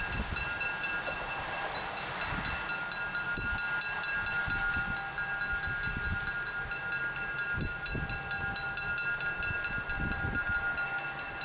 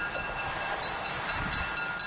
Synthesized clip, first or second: second